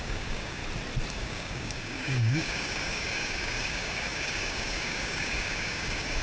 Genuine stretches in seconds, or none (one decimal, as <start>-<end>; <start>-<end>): 0.6-1.1